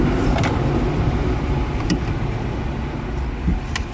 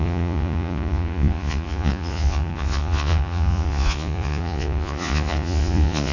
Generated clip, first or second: second